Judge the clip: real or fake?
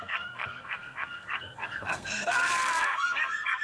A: fake